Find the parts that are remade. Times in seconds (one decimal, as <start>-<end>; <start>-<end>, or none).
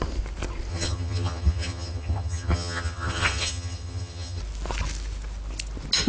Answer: 0.7-4.4